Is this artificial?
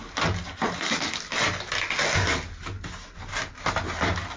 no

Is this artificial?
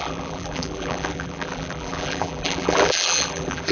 yes